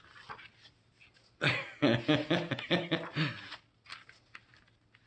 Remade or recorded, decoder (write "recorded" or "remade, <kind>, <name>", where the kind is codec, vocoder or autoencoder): recorded